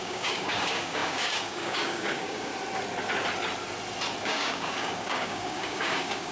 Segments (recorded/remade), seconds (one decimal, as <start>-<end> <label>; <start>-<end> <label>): 0.0-2.5 remade; 2.5-4.2 recorded; 4.2-6.3 remade

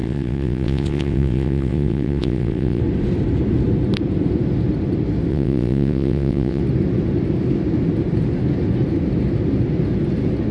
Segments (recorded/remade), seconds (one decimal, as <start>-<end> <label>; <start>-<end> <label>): 0.0-2.8 remade; 2.8-5.3 recorded; 5.3-6.6 remade; 6.6-10.5 recorded

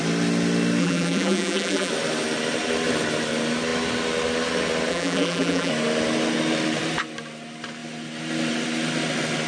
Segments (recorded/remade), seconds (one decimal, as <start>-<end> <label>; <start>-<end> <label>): 0.0-0.8 recorded; 0.8-1.9 remade; 1.9-4.9 recorded; 4.9-5.7 remade; 5.7-9.5 recorded

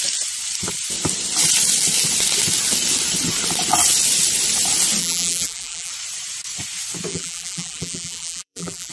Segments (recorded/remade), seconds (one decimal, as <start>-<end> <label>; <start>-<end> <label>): 0.0-5.0 recorded; 5.0-5.9 remade; 5.9-7.1 recorded; 7.1-8.9 remade